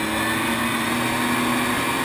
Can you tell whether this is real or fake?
real